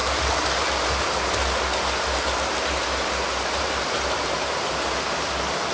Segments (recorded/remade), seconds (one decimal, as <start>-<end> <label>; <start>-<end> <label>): 0.0-5.7 recorded